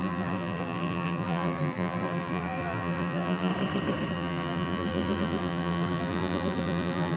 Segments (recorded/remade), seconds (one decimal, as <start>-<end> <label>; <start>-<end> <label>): 0.0-3.5 remade; 3.5-4.1 recorded; 4.1-7.2 remade